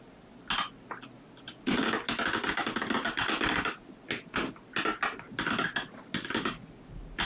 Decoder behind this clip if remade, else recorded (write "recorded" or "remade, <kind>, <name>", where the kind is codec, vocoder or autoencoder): recorded